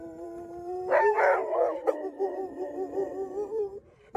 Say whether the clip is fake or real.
fake